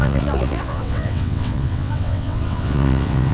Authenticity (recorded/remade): remade